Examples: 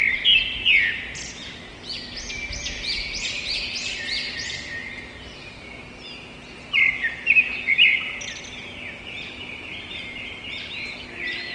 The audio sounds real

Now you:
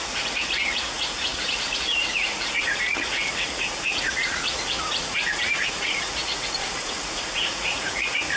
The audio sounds fake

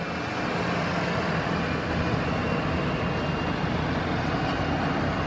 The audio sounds real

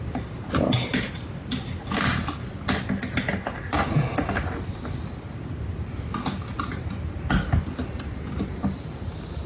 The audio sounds real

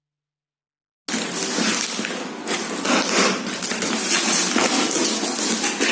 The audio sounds real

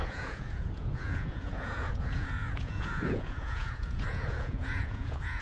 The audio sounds fake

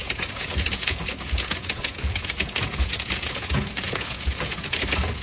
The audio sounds fake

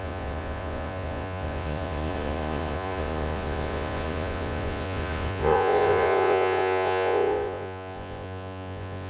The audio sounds fake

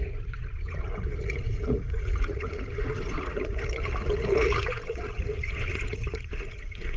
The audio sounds fake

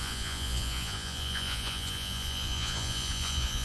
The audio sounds fake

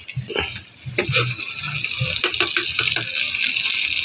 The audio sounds real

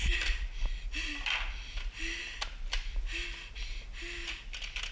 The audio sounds real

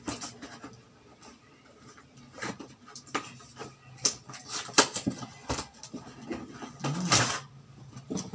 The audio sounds real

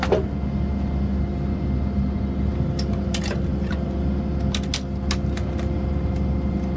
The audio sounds real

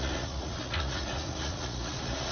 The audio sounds fake